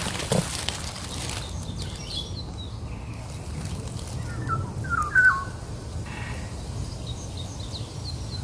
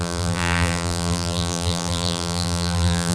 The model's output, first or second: second